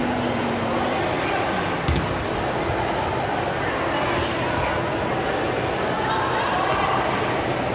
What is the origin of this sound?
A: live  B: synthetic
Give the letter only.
A